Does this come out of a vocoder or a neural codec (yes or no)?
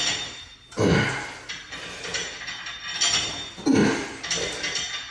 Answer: no